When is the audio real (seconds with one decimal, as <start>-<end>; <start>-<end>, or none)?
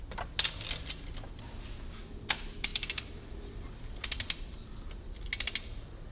0.0-6.1